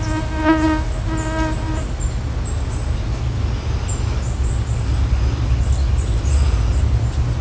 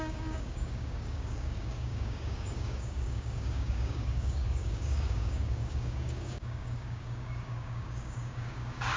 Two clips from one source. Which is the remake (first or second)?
second